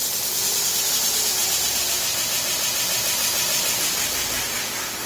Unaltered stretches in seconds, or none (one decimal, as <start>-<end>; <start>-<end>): 0.0-5.1